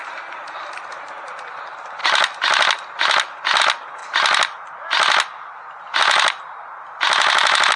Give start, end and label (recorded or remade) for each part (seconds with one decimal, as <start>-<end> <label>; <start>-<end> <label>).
0.0-7.8 recorded

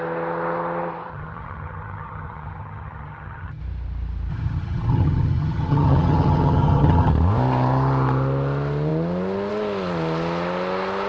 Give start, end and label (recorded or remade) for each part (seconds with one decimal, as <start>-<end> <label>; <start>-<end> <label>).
0.0-1.1 recorded; 1.1-3.6 remade; 3.6-4.3 recorded; 4.3-7.1 remade; 7.1-11.1 recorded

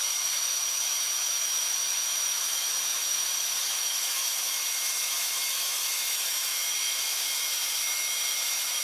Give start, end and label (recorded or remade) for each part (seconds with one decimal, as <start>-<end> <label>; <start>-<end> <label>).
0.0-8.8 remade

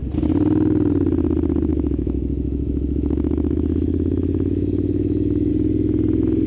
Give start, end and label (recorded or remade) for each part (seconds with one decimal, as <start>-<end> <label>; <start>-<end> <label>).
0.0-1.7 recorded; 1.7-5.5 remade; 5.5-6.5 recorded

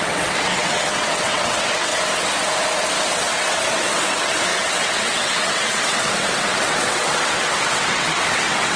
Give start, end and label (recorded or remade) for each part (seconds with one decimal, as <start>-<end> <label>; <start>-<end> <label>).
0.0-1.9 remade; 1.9-3.1 recorded; 3.1-8.8 remade

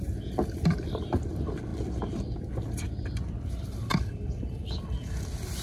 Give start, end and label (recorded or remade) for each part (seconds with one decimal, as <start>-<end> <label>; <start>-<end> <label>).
0.0-5.6 recorded

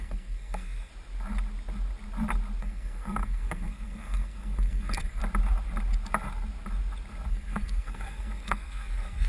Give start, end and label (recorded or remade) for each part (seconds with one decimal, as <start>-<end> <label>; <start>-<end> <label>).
0.0-0.9 remade; 0.9-2.6 recorded; 2.6-5.2 remade; 5.2-7.3 recorded; 7.3-9.3 remade